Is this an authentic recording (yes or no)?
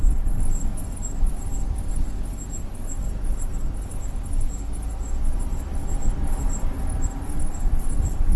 yes